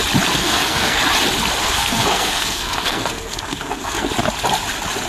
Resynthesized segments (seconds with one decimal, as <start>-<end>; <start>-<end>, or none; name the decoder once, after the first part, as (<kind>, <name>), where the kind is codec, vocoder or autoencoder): 0.4-1.0 (codec, SNAC); 1.6-4.1